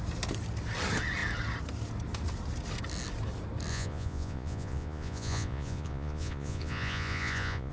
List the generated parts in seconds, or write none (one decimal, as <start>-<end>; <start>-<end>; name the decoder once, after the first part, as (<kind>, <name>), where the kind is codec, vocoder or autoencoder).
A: 3.7-7.7 (vocoder, Vocos)